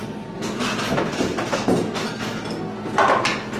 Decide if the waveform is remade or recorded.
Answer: recorded